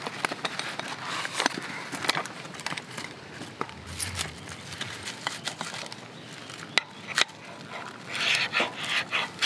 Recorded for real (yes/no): yes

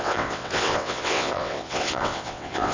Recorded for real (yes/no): no